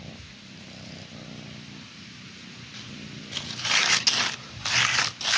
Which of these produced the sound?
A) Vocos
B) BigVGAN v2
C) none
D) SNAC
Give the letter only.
C